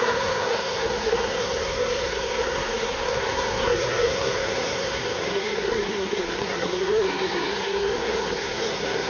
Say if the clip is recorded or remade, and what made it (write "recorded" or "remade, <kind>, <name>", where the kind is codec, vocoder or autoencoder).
remade, codec, SNAC